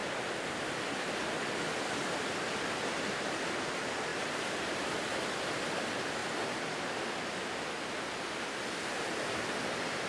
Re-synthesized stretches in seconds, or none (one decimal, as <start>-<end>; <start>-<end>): none